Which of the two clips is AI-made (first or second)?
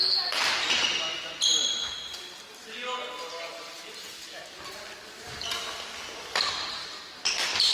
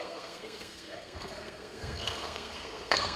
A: second